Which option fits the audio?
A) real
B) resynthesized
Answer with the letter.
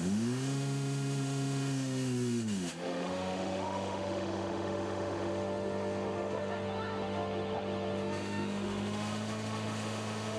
B